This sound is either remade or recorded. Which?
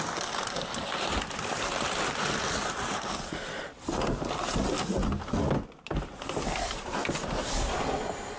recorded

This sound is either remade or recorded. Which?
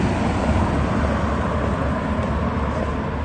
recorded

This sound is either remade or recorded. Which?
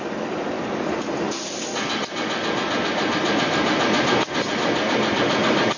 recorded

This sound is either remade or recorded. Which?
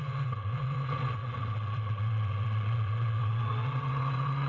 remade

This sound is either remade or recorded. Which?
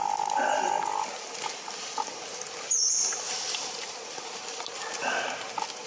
recorded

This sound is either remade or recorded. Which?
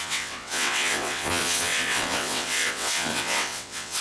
remade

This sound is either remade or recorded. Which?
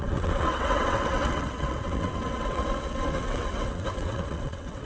remade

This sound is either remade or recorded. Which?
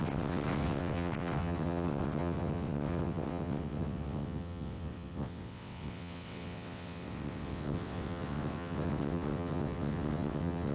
remade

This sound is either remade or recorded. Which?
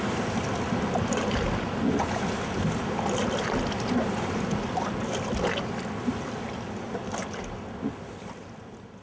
recorded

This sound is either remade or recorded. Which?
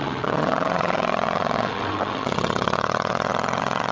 remade